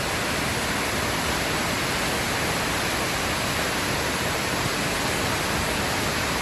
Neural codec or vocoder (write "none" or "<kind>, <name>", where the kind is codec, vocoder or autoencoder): none